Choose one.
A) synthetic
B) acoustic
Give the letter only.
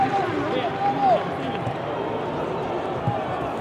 B